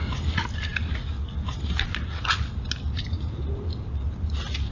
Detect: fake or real real